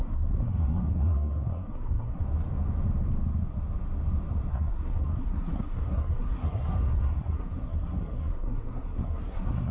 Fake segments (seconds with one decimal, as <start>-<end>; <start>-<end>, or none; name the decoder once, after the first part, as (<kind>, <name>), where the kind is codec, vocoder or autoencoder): 0.0-2.2 (codec, SNAC); 4.5-9.7